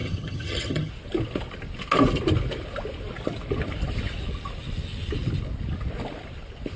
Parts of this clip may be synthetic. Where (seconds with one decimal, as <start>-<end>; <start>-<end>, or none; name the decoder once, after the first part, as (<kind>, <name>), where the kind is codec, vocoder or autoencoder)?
0.0-0.9 (vocoder, HiFi-GAN)